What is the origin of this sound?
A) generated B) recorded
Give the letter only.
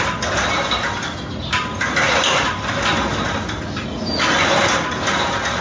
B